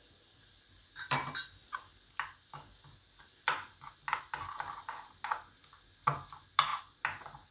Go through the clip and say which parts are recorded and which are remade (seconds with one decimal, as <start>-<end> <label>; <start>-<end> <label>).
0.0-7.5 recorded